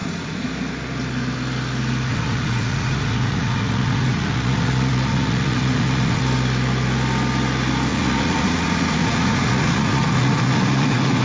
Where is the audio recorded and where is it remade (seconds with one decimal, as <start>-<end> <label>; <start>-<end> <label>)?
0.0-0.5 remade; 0.5-2.1 recorded; 2.1-6.2 remade; 6.2-7.9 recorded; 7.9-11.2 remade